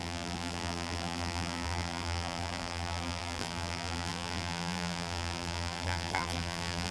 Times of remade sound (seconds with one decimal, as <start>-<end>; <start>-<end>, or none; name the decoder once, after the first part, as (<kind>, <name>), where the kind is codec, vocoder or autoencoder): 0.0-6.9 (vocoder, BigVGAN v2)